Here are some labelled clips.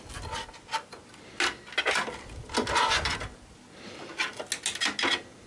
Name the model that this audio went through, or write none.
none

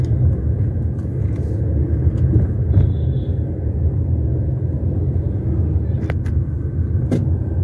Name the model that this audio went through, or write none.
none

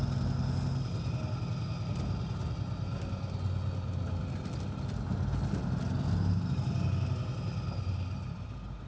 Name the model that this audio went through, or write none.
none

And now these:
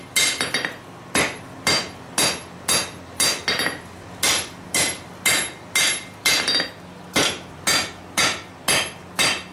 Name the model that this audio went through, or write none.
none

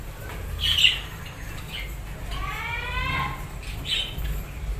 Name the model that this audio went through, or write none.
none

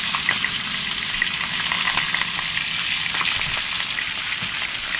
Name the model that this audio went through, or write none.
none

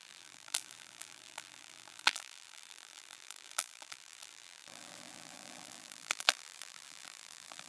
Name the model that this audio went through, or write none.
vocoder, BigVGAN v2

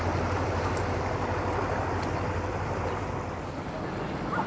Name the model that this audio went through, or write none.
none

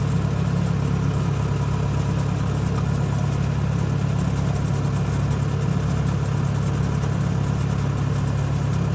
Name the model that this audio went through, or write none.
none